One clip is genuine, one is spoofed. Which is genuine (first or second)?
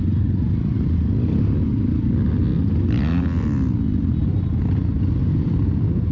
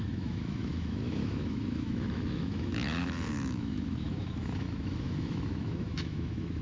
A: first